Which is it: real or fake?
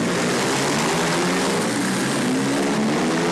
real